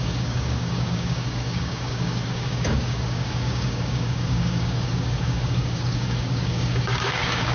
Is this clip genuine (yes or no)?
no